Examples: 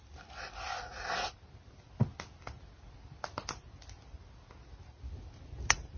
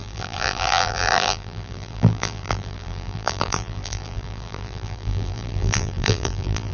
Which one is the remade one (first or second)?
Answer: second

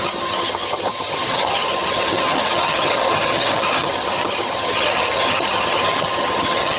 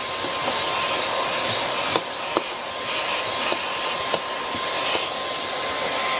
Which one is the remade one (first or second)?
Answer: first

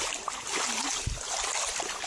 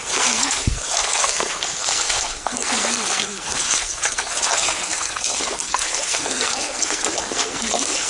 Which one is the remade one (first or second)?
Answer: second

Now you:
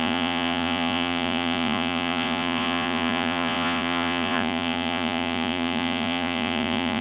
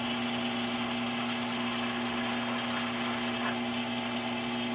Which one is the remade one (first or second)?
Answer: first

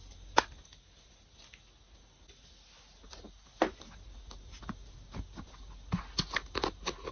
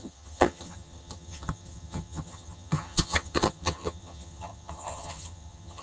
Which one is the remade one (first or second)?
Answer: second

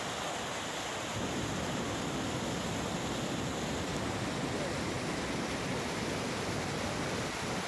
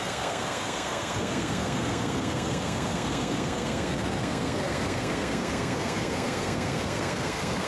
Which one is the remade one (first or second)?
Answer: second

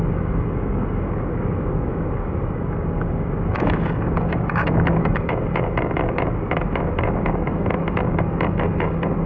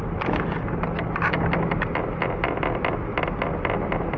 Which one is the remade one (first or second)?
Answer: first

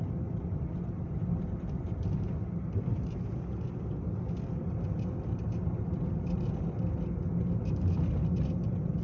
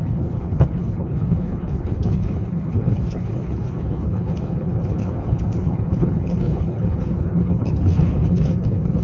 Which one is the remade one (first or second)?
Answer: second